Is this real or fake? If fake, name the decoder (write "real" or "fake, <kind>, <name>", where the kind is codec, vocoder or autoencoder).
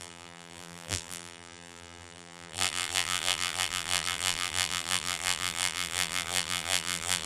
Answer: fake, vocoder, BigVGAN v2